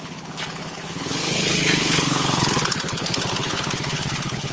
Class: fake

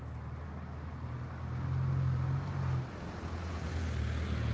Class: real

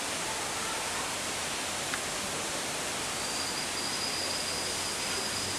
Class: real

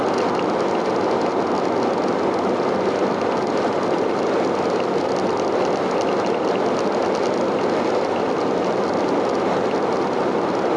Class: real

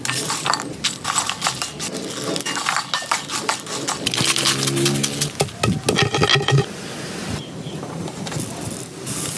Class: real